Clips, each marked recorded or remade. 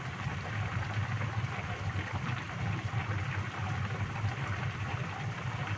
remade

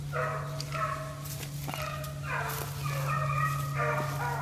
recorded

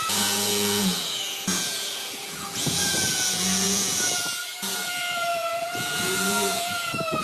remade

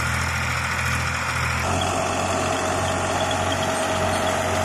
recorded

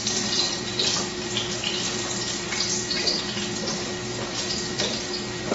remade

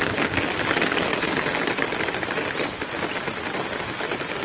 recorded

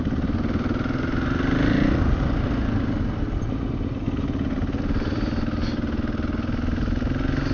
recorded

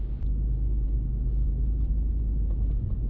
recorded